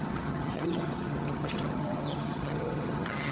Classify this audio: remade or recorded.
remade